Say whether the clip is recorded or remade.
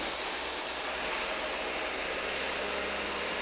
recorded